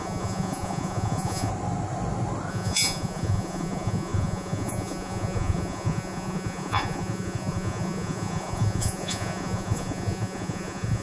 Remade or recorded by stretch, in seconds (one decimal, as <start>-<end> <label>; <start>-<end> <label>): 0.0-1.5 remade; 1.5-2.5 recorded; 2.5-11.0 remade